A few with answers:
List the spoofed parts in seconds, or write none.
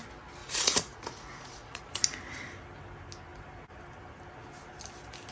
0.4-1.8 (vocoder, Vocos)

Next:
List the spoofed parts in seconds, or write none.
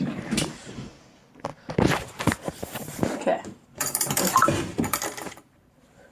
0.0-6.1 (vocoder, BigVGAN v2)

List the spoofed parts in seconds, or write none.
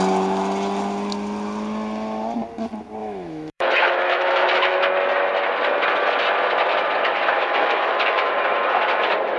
3.0-4.8 (autoencoder, DAC-VAE); 7.4-8.3